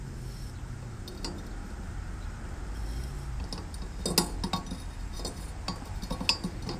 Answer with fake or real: real